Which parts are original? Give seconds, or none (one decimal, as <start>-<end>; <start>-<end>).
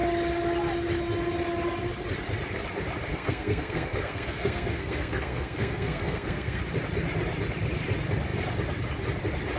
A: 0.0-3.1; 6.6-9.6